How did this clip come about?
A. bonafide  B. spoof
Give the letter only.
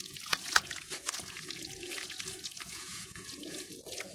B